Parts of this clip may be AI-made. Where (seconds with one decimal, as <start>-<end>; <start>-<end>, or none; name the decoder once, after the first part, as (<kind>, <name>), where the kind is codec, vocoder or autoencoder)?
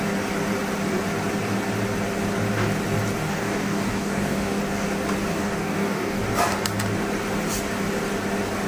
3.2-4.6 (codec, DAC); 5.3-6.2